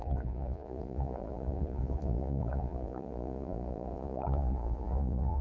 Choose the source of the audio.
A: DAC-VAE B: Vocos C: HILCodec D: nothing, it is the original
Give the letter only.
B